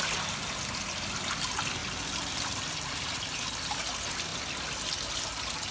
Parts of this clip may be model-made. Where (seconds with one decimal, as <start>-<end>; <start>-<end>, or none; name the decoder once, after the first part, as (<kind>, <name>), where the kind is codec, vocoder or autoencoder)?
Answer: none